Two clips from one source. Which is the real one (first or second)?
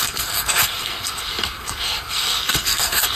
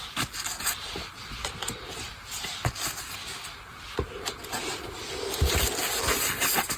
second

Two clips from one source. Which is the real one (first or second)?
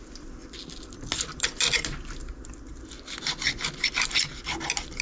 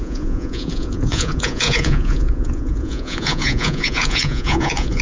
first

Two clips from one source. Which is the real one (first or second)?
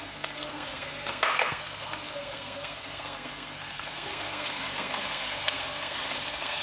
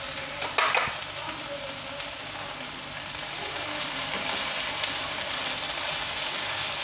second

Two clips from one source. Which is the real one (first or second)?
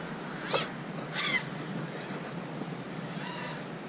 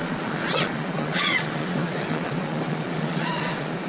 first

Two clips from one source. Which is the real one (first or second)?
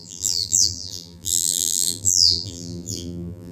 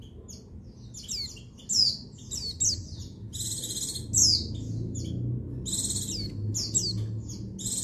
second